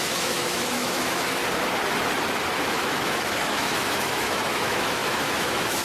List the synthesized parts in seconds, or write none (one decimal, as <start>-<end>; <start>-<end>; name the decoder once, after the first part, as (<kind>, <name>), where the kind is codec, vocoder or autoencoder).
0.0-1.4 (autoencoder, DAC-VAE); 2.6-5.8